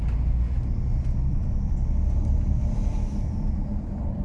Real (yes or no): yes